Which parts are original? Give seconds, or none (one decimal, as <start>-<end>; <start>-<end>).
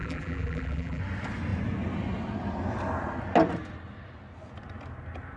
1.0-5.4